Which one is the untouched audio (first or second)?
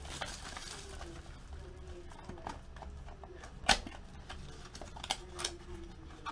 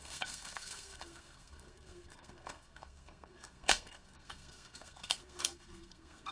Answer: first